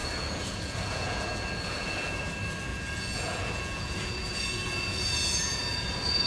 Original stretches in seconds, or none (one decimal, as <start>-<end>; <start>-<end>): 2.2-2.7